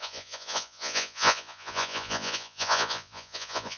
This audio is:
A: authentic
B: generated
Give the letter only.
B